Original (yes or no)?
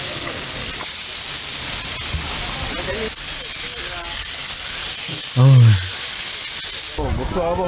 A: yes